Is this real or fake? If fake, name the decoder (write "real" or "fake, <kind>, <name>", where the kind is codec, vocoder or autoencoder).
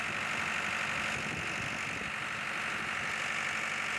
real